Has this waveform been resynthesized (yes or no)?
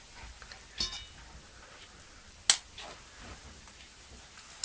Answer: no